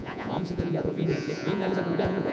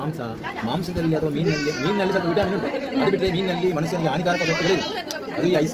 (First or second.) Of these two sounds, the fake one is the first